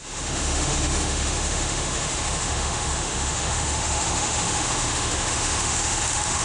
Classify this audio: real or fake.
fake